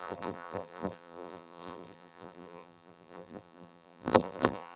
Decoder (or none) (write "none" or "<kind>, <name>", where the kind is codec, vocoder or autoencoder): vocoder, BigVGAN v2